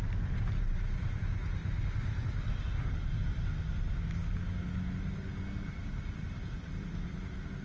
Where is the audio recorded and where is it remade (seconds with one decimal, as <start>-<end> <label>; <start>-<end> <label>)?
0.0-7.6 recorded